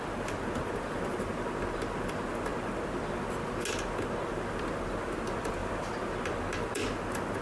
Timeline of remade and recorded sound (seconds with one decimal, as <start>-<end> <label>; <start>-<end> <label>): 0.0-7.4 recorded